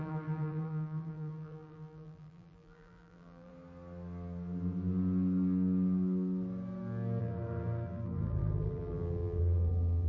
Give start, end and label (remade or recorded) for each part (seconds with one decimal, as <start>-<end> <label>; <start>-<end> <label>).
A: 0.0-3.5 remade; 3.5-7.2 recorded; 7.2-10.1 remade

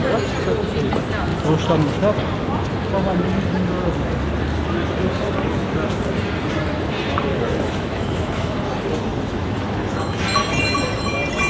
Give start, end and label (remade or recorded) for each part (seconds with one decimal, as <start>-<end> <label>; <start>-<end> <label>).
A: 0.0-7.3 recorded; 7.3-8.7 remade; 8.7-9.1 recorded; 9.1-10.2 remade; 10.2-11.5 recorded

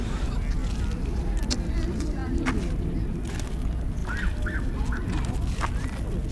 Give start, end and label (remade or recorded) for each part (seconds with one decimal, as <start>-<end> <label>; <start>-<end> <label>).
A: 0.0-6.3 recorded